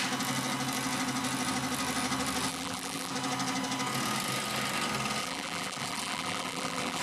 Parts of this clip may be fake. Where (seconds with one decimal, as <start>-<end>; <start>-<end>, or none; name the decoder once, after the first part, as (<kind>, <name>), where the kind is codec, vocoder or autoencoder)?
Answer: 2.5-3.1 (vocoder, BigVGAN v2); 5.2-7.0